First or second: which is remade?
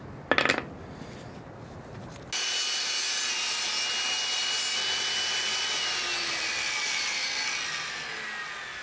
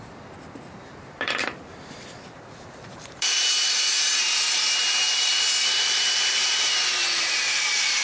second